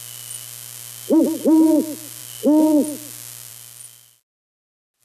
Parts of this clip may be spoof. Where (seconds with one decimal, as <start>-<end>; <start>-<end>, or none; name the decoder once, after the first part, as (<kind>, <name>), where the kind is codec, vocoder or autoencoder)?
none